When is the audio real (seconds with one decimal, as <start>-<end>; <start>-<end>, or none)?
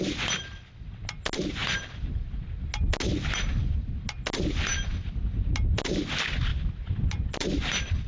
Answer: 0.0-6.5; 7.6-8.1